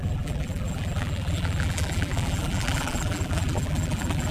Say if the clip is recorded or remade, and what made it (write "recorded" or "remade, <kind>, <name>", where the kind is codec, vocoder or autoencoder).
remade, vocoder, BigVGAN v2